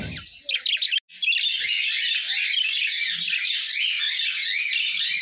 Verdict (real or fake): real